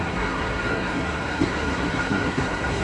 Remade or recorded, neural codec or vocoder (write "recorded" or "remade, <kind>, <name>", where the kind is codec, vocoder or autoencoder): remade, codec, SNAC